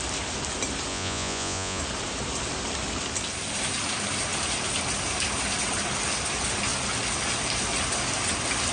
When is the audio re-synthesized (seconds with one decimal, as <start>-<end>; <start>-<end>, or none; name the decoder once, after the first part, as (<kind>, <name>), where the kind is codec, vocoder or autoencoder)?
0.9-1.8 (vocoder, Vocos)